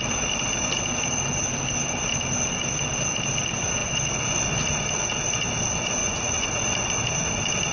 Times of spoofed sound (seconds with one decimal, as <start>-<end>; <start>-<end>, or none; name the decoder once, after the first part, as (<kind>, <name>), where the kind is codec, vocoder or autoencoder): 3.8-4.5 (vocoder, Vocos); 6.0-6.9